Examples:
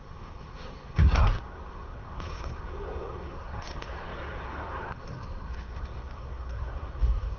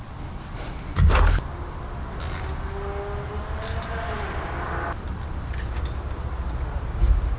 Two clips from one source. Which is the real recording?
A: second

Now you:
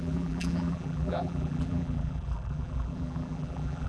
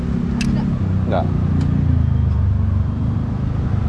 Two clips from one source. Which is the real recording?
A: second